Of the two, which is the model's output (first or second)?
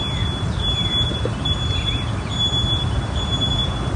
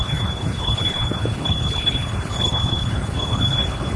second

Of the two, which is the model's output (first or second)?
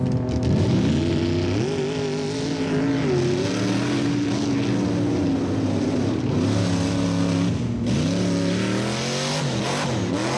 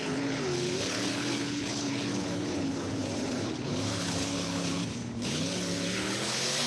second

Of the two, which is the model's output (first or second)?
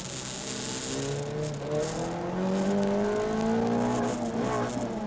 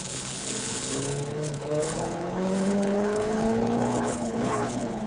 second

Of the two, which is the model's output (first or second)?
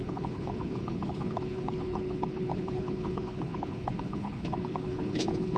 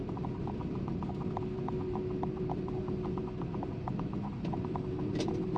first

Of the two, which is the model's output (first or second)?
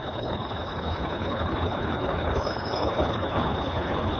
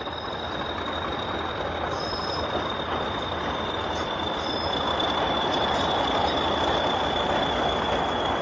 first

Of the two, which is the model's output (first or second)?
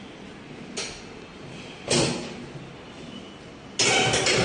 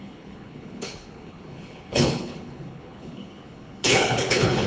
second